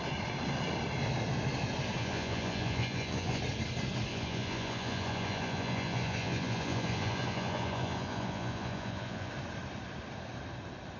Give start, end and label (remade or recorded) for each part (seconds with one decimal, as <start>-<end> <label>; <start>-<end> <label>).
0.0-2.0 recorded; 2.0-3.4 remade; 3.4-4.1 recorded; 4.1-9.3 remade; 9.3-11.0 recorded